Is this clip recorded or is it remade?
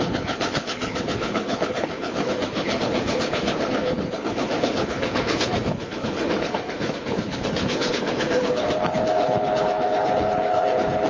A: remade